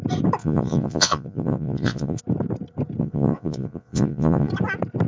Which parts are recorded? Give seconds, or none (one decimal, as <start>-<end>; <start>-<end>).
0.0-0.4; 2.2-3.0; 4.5-5.1